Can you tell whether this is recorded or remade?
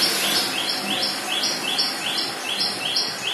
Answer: recorded